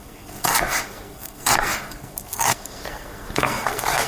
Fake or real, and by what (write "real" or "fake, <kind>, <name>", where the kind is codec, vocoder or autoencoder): fake, codec, SNAC